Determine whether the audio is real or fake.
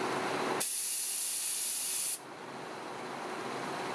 real